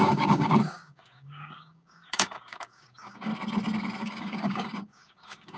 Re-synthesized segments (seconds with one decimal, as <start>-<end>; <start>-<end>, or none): 0.0-3.3; 4.0-5.6

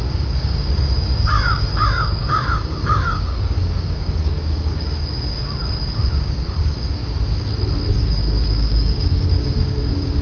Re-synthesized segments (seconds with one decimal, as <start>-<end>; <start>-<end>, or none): 0.0-7.0; 7.9-10.2

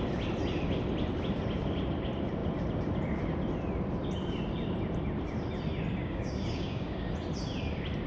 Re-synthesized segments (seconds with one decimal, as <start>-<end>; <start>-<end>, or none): 6.0-7.1

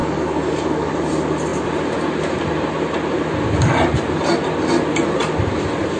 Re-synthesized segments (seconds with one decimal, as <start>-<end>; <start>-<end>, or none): 0.0-0.9

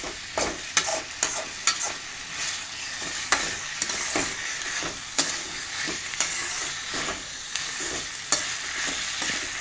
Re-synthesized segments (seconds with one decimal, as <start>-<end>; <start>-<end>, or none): 2.8-3.8; 4.3-8.2

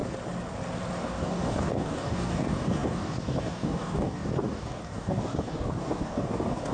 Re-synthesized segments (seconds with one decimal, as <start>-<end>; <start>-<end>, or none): 1.0-6.7